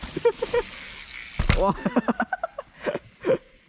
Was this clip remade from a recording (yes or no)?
no